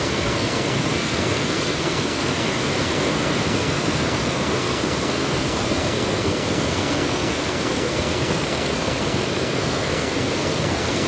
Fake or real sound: fake